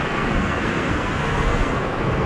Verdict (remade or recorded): remade